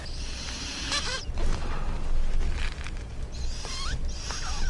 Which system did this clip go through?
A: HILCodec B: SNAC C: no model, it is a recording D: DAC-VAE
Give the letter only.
C